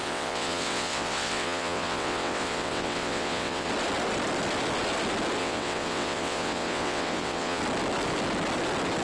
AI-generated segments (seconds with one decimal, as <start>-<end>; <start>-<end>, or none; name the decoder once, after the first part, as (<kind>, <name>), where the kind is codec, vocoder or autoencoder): 0.0-3.7 (vocoder, WaveNeXt); 5.4-7.6